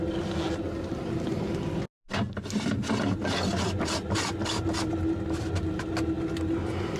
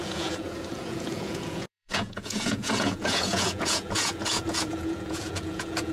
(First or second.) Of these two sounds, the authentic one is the first